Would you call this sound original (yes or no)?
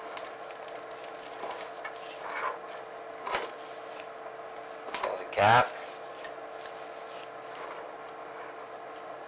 yes